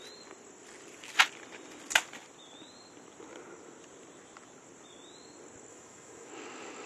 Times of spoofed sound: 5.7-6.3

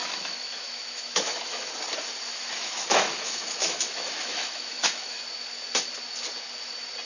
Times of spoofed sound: 0.0-1.7; 2.3-5.2